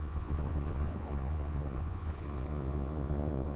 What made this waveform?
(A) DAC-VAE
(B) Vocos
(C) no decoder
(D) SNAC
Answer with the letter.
B